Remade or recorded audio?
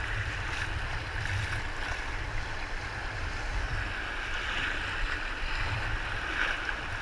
recorded